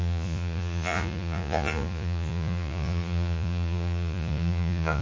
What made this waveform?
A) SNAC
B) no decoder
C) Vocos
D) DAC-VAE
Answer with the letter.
C